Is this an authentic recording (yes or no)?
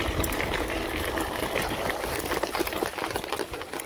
no